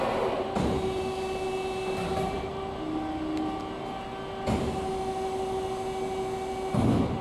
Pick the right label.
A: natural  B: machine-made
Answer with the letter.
A